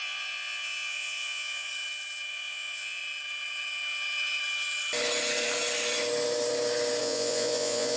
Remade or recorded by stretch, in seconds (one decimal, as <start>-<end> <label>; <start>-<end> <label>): 0.0-1.7 remade; 1.7-2.3 recorded; 2.3-3.0 remade; 3.0-7.0 recorded; 7.0-8.0 remade